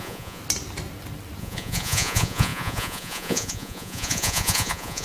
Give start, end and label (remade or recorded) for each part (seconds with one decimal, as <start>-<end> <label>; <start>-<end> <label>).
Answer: 0.0-0.4 remade; 0.4-1.4 recorded; 1.4-5.0 remade